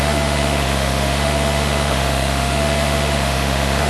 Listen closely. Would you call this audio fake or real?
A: fake